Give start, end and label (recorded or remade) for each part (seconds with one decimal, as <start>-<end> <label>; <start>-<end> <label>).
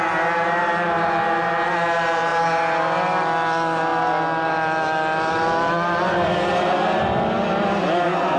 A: 0.0-8.4 recorded